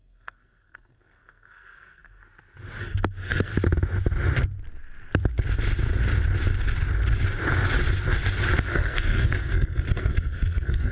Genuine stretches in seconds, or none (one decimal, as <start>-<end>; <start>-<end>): 2.2-2.8; 3.5-8.6